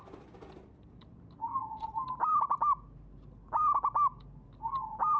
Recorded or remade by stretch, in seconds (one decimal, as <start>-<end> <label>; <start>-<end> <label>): 0.0-5.2 recorded